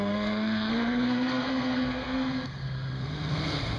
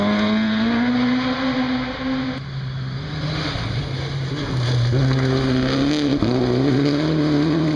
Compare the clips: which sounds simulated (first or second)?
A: first